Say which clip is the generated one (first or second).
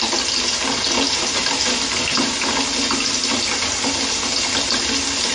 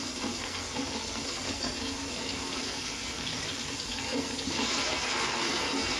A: second